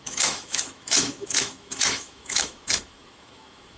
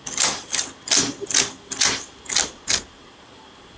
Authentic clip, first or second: second